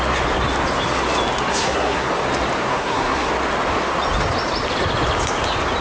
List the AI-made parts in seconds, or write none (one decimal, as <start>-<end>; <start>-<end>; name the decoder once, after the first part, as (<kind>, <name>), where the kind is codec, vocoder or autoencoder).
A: 1.5-2.1 (codec, SNAC); 2.7-3.3